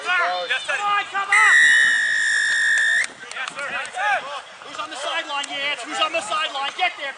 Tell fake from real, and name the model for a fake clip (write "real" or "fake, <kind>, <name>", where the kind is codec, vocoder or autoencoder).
real